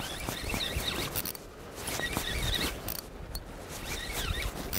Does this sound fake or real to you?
real